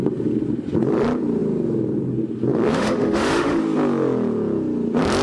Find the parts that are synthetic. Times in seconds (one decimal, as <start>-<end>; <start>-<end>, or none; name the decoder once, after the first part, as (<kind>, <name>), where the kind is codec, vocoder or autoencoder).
2.7-3.6 (autoencoder, DAC-VAE)